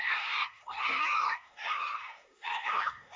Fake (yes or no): yes